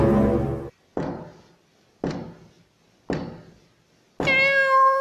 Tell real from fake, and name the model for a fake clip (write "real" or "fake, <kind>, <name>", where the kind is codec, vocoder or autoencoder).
real